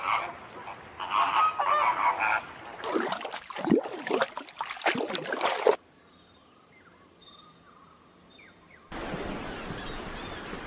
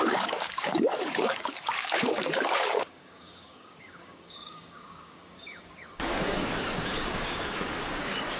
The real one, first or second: first